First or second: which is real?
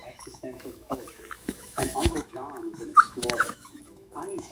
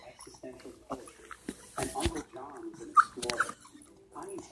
second